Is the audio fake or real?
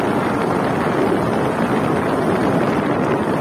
real